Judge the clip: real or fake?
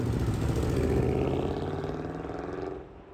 real